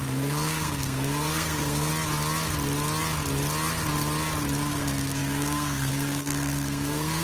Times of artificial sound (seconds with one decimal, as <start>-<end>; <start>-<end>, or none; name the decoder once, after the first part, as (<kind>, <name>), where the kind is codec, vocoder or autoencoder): 0.0-1.9 (codec, SNAC); 4.7-7.2